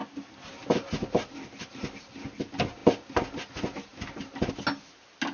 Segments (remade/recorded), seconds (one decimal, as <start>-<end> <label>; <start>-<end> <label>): 0.0-5.3 recorded